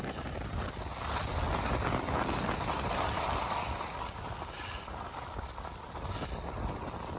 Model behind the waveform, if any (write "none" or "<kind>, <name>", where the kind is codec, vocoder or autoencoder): none